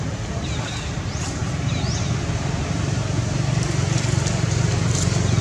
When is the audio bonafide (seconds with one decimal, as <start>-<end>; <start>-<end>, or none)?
0.0-5.4